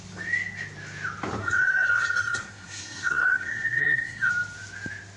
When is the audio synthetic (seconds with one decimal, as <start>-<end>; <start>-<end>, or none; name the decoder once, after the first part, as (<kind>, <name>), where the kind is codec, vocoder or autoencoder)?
1.4-4.3 (codec, SNAC)